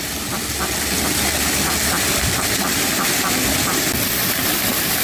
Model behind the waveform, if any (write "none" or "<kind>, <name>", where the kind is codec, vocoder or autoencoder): none